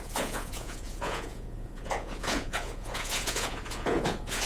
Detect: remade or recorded remade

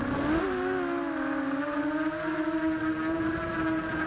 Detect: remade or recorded recorded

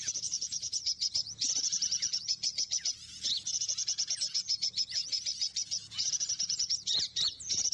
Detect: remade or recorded remade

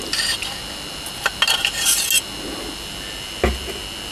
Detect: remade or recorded recorded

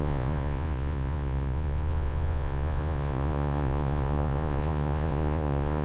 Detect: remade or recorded remade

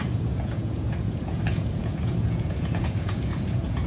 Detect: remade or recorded remade